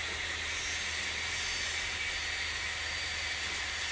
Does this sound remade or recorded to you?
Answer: recorded